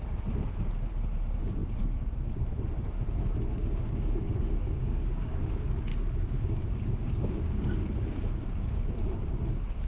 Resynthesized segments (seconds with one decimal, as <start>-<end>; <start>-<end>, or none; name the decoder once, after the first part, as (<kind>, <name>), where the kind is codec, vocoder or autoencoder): 3.6-5.5 (codec, DAC); 5.9-8.9